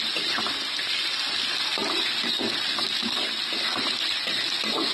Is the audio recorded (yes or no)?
yes